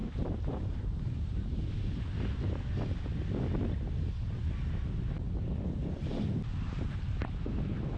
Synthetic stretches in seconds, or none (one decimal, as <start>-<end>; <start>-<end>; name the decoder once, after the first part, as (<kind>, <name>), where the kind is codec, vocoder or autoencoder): 0.0-2.0 (vocoder, BigVGAN v2); 6.5-7.5